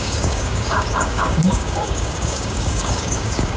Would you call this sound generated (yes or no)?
yes